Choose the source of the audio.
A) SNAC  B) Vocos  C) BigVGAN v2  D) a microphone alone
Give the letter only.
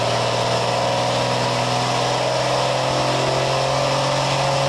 D